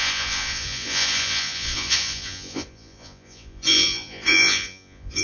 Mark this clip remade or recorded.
remade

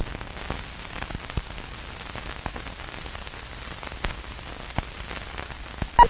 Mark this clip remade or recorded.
recorded